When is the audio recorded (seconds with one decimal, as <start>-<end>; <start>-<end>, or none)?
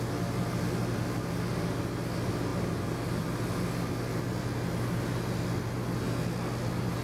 0.0-7.0